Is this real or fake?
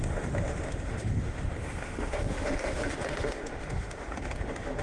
fake